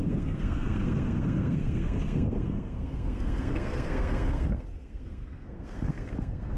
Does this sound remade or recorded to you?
remade